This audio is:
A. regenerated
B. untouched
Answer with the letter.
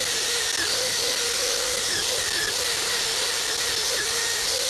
B